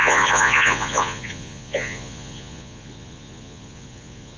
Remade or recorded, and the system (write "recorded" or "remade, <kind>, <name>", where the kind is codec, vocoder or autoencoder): remade, vocoder, Vocos